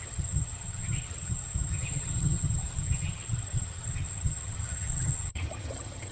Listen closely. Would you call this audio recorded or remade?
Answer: remade